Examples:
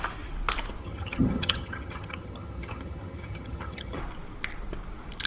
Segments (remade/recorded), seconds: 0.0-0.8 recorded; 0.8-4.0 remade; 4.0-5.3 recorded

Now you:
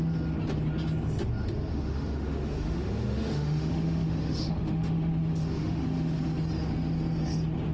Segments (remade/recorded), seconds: 0.0-1.7 recorded; 1.7-6.2 remade; 6.2-7.7 recorded